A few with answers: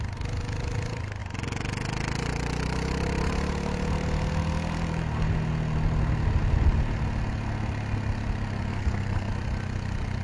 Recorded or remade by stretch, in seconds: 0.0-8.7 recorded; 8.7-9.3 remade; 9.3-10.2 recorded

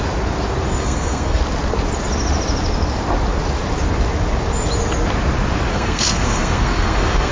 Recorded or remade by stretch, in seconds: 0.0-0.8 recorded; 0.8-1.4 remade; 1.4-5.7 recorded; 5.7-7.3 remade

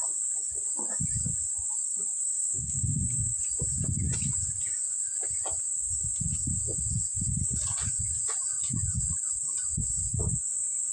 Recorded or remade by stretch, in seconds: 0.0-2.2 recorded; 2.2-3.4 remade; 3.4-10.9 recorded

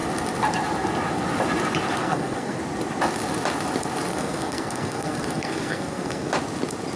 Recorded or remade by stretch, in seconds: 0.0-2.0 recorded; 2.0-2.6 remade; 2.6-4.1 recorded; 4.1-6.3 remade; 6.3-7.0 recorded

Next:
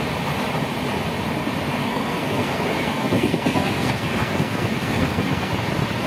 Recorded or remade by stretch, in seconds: 0.0-1.8 recorded; 1.8-5.5 remade; 5.5-6.1 recorded